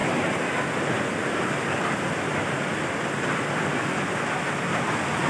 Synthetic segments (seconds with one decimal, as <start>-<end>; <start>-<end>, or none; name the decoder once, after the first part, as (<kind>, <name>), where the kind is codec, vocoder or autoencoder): none

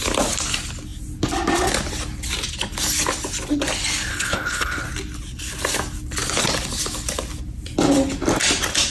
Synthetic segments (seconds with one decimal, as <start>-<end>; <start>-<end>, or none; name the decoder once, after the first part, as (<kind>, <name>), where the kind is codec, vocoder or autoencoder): 4.1-4.8 (codec, HILCodec)

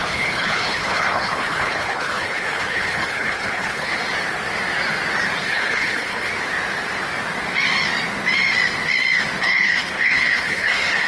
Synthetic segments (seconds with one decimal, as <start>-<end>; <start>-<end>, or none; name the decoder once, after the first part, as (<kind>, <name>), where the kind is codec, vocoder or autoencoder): 0.0-4.0 (codec, HILCodec); 5.4-6.3; 9.4-11.1

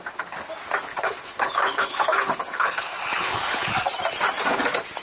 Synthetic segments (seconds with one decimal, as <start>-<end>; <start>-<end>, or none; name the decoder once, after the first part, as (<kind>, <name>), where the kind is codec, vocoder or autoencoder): 0.9-3.7 (codec, HILCodec)

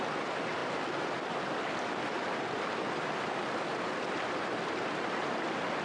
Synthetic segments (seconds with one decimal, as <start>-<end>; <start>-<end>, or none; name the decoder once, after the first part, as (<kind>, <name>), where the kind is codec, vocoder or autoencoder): none

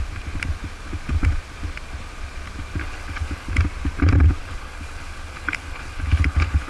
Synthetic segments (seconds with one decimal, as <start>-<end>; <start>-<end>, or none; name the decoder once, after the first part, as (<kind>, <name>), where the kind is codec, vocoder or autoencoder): 2.8-3.5 (codec, HILCodec); 4.4-6.7

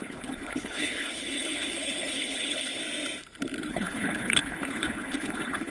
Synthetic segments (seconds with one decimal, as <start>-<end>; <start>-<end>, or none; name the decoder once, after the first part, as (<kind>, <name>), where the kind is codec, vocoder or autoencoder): 0.0-2.8 (codec, HILCodec); 3.7-5.7